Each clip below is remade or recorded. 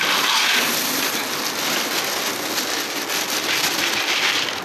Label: recorded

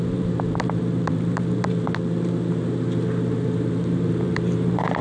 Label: remade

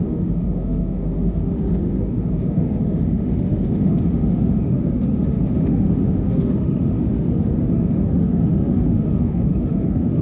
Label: remade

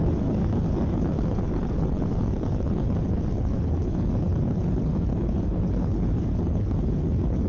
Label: remade